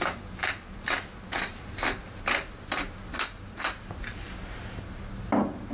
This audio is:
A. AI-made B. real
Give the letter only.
B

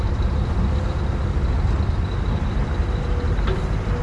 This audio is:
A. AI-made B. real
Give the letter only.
B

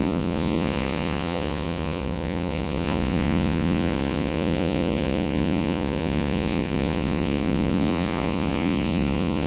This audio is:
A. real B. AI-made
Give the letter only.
B